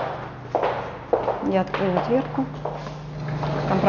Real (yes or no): yes